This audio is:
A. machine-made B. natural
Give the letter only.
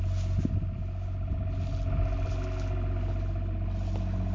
B